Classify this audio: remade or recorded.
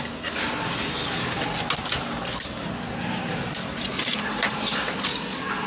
recorded